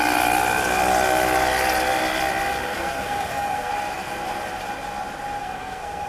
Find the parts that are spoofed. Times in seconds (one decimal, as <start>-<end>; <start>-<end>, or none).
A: 2.7-3.7; 5.4-6.1